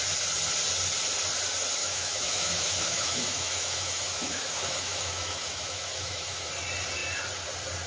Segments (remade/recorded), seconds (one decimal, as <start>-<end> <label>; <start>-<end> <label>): 0.0-1.8 recorded; 1.8-6.5 remade; 6.5-7.9 recorded